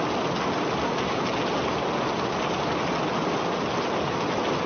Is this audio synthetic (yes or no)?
no